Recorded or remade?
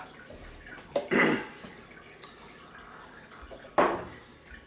recorded